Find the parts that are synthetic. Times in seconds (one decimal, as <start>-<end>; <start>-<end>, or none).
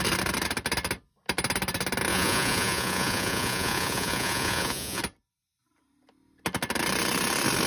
2.1-5.0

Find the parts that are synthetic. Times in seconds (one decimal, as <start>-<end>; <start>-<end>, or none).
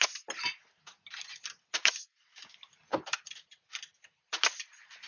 none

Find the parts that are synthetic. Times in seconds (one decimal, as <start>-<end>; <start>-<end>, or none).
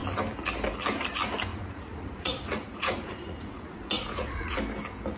1.5-4.6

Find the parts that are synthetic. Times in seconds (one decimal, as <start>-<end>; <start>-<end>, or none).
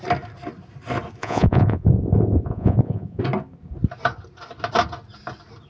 1.2-3.2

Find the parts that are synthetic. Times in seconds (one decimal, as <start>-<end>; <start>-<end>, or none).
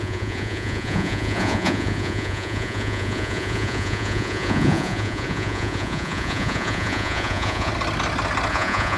0.0-7.7; 8.5-9.0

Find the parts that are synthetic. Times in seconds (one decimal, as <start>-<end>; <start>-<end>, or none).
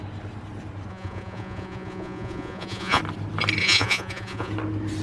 0.9-3.0; 3.6-4.5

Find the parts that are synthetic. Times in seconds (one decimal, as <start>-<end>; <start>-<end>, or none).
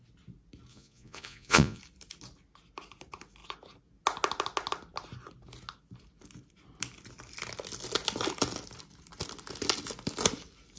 0.7-1.8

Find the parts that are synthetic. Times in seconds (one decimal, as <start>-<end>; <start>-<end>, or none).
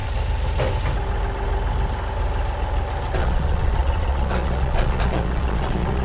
3.2-6.0